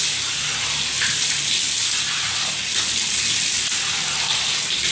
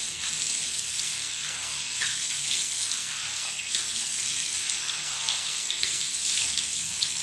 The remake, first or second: second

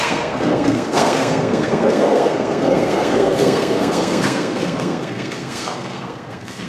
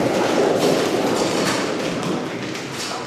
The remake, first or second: first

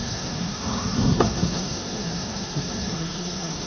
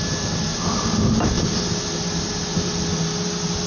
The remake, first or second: first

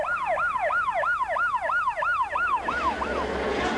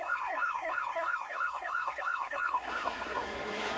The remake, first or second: second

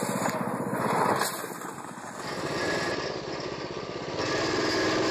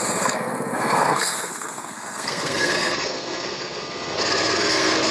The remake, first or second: second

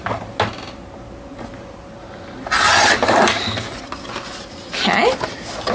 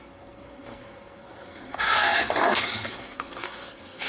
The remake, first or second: second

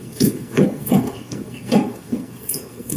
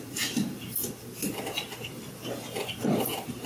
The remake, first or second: first